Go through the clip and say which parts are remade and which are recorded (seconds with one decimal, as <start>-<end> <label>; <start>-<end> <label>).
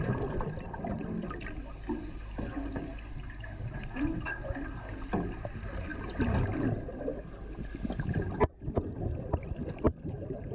0.0-10.5 recorded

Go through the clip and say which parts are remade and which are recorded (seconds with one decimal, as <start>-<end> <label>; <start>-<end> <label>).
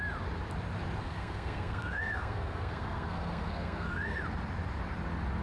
0.0-1.0 recorded; 1.0-4.2 remade; 4.2-5.4 recorded